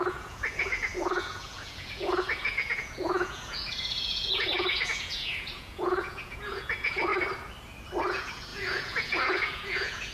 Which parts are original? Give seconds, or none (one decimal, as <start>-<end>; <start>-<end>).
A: 7.1-8.1